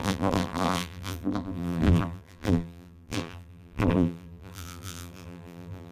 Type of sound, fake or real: fake